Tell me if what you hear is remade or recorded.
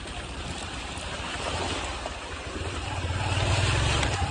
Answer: recorded